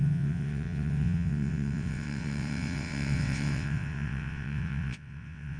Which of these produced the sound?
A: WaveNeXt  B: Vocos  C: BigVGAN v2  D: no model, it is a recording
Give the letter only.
A